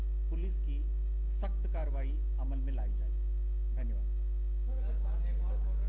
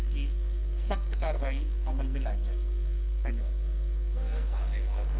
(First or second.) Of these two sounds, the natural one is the first